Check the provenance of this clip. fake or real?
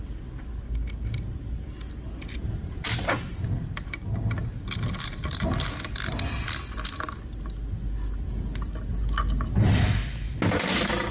real